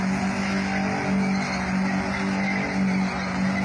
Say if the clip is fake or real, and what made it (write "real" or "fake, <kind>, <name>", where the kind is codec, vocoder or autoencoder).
real